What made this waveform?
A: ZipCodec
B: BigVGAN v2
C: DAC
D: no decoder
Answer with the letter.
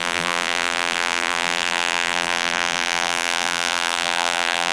B